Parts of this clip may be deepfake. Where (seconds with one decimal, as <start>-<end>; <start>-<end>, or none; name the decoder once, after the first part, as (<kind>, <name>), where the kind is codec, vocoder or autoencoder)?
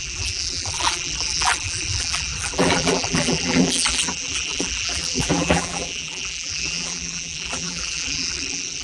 0.0-8.8 (vocoder, BigVGAN v2)